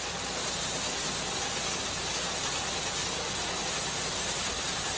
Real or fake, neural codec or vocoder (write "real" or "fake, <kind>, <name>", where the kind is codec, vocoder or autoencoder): real